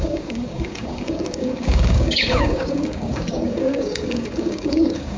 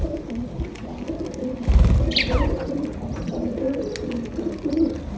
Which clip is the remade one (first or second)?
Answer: first